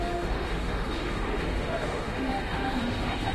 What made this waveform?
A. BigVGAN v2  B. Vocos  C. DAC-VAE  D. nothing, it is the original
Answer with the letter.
C